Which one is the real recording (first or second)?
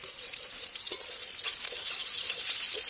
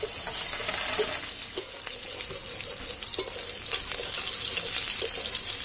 second